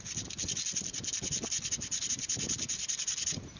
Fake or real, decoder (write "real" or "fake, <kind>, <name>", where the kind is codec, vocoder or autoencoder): real